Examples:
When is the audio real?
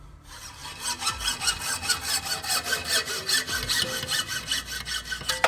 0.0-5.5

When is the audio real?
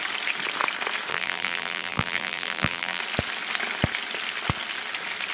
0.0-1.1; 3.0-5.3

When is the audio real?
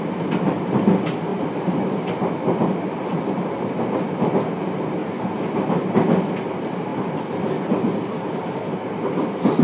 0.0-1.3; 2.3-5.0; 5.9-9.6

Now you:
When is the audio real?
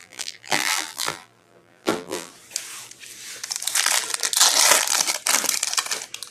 2.3-6.3